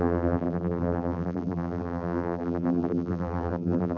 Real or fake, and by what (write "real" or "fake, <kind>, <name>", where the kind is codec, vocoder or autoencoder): fake, vocoder, BigVGAN v2